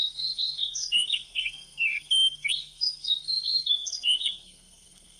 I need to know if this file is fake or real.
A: fake